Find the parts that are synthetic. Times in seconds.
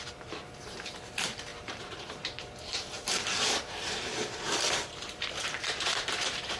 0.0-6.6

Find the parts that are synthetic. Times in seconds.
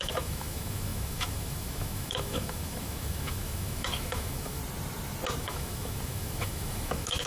0.0-4.6; 5.4-7.3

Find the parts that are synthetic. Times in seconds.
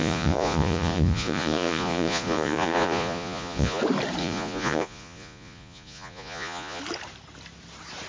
0.0-3.8; 4.2-6.8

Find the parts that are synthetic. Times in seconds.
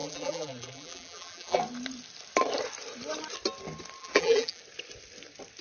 0.0-1.6; 4.0-4.6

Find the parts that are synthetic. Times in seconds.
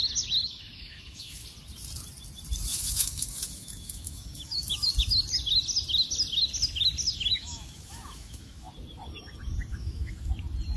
0.4-1.4; 2.7-4.9; 7.3-8.7; 9.7-10.3